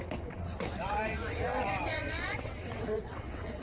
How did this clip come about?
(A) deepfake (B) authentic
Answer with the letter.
A